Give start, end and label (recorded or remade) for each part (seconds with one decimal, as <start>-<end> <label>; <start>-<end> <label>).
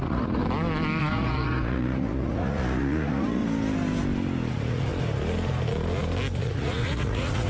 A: 0.0-0.4 remade; 0.4-1.0 recorded; 1.0-3.4 remade; 3.4-4.5 recorded; 4.5-4.9 remade; 4.9-6.4 recorded; 6.4-7.5 remade